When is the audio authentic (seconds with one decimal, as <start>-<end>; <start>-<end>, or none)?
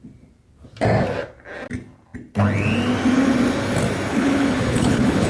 0.0-4.1